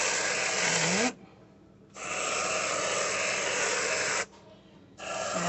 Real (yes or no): yes